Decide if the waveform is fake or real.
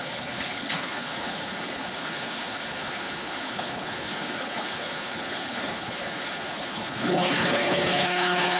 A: fake